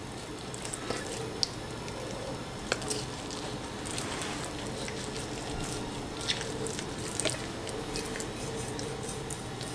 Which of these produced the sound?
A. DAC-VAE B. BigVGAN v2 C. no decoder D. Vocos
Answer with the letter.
C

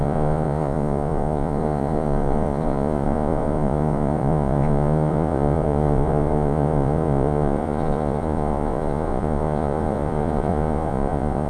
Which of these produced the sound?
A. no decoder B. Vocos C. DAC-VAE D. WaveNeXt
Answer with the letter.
B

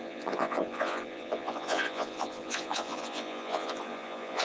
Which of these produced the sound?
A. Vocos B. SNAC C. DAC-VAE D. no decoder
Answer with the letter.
A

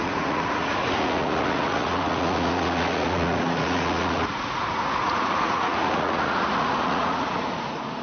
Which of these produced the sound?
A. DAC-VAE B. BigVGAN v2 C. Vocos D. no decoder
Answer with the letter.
C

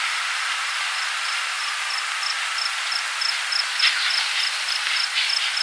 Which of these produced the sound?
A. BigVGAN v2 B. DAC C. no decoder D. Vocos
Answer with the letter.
C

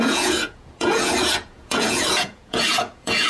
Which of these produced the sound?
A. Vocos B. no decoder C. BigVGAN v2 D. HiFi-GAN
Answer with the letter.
A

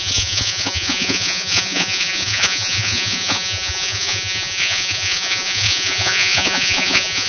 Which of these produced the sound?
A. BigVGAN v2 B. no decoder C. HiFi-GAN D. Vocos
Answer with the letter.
D